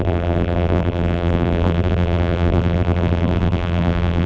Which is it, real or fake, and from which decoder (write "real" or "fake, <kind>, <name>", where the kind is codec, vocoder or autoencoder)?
fake, vocoder, BigVGAN v2